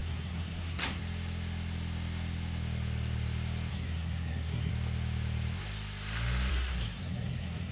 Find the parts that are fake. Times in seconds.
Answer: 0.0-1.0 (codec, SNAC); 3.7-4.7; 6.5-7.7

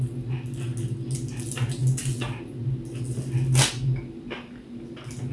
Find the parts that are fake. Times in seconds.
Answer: none

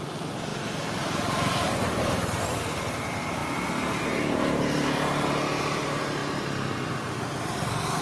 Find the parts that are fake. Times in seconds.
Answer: none

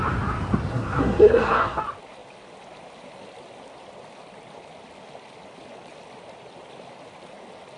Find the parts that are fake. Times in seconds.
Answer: 0.7-1.8 (codec, SNAC)

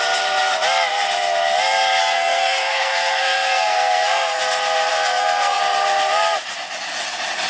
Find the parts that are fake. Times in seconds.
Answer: 2.0-4.4 (codec, SNAC); 4.9-5.6

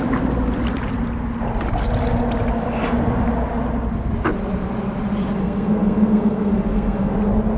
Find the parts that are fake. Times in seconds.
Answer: 5.4-7.1 (codec, SNAC)